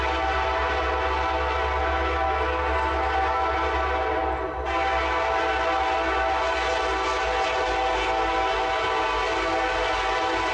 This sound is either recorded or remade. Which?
recorded